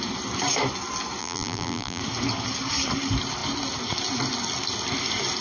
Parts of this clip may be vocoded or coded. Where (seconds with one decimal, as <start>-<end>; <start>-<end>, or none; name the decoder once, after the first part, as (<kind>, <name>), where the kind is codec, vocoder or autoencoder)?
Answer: 1.2-2.0 (vocoder, BigVGAN v2)